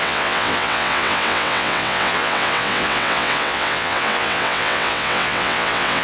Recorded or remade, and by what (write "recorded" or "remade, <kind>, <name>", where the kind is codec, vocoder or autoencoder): remade, vocoder, WaveNeXt